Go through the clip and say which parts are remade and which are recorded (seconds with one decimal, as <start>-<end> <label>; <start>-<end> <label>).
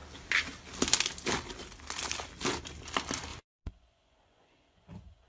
0.0-3.3 recorded; 3.3-5.3 remade